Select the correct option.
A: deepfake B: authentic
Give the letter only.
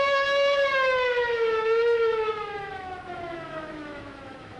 A